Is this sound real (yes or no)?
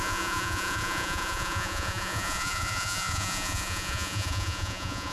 no